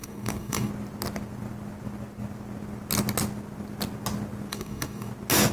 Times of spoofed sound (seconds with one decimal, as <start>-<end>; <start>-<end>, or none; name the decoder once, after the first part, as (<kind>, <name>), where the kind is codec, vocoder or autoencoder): 0.0-0.7 (codec, DAC); 4.5-5.1